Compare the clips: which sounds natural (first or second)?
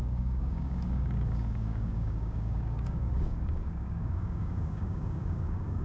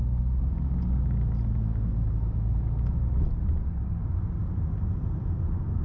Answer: second